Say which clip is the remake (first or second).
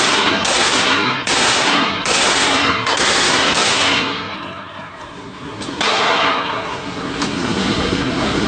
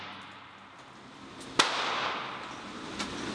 first